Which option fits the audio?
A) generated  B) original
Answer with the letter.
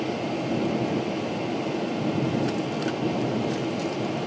B